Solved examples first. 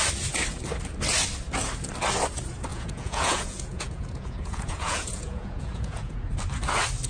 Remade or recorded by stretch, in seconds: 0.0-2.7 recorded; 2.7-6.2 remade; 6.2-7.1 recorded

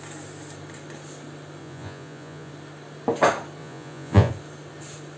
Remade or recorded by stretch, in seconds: 0.0-1.6 recorded; 1.6-2.5 remade; 2.5-3.6 recorded; 3.6-4.3 remade; 4.3-5.2 recorded

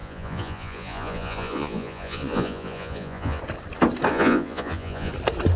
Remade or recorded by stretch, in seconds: 0.0-3.4 remade; 3.4-4.1 recorded; 4.1-5.1 remade; 5.1-5.6 recorded

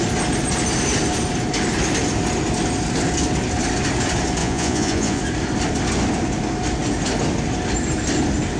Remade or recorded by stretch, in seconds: 0.0-4.4 recorded; 4.4-5.2 remade; 5.2-8.6 recorded

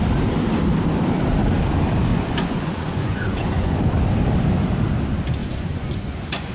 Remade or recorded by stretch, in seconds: 0.0-2.1 recorded; 2.1-3.8 remade; 3.8-5.4 recorded; 5.4-6.5 remade